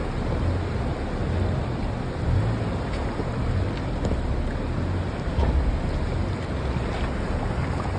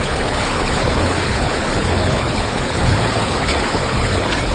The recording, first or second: first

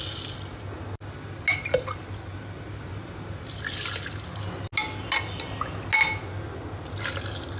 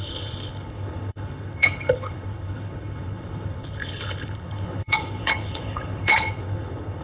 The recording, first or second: first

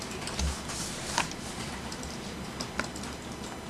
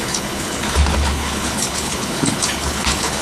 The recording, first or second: first